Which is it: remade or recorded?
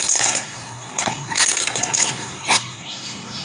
remade